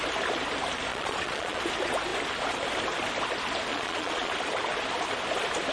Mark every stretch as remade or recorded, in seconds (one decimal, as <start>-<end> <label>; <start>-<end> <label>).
0.0-0.9 recorded; 0.9-1.6 remade; 1.6-3.7 recorded; 3.7-4.3 remade; 4.3-5.7 recorded